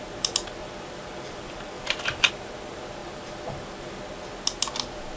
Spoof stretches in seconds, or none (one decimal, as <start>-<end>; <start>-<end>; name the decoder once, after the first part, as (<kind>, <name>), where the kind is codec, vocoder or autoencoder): 0.6-2.3 (vocoder, BigVGAN v2); 3.0-3.9